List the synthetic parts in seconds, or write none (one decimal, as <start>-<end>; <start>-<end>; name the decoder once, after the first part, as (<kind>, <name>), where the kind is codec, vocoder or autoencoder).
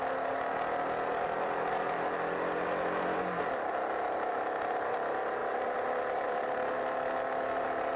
5.4-6.8 (vocoder, BigVGAN v2)